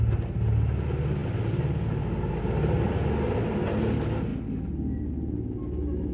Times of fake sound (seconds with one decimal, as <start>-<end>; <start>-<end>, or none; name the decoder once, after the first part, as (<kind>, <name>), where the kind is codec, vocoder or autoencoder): none